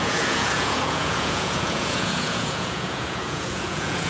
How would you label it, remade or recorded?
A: remade